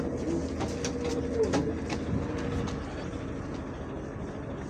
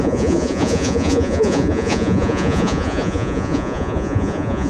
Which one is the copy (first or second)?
second